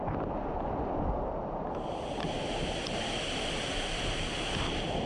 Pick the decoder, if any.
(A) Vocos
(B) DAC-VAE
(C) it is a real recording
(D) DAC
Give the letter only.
C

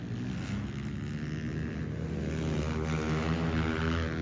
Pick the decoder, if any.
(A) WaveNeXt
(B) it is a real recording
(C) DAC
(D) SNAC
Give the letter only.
B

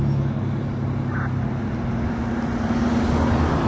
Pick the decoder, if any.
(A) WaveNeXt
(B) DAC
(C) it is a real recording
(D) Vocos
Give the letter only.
C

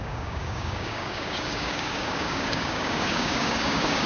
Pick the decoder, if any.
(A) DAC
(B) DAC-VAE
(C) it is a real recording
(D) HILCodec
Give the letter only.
A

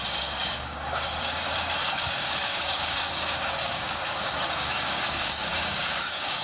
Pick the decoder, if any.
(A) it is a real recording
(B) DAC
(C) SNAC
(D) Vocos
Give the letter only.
B